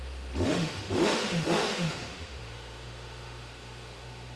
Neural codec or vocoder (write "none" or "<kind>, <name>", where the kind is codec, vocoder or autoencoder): autoencoder, DAC-VAE